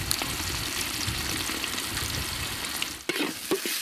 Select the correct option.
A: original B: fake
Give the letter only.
A